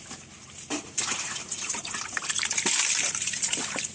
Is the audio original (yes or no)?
no